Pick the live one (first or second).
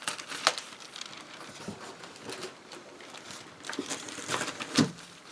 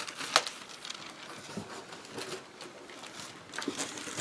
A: second